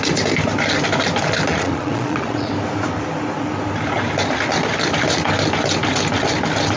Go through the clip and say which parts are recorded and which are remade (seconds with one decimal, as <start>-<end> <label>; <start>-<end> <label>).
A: 0.0-1.5 recorded; 1.5-2.5 remade; 2.5-6.8 recorded